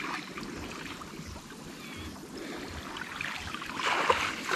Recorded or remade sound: recorded